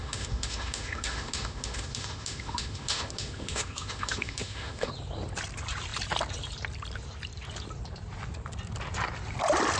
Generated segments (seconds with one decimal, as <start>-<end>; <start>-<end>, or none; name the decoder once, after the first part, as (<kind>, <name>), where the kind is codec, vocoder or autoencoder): 0.0-4.9 (autoencoder, DAC-VAE)